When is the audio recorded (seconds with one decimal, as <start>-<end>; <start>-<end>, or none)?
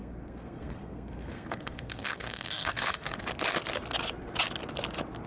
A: 3.2-5.3